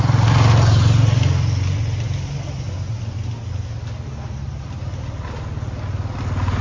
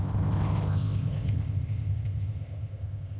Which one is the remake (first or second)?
second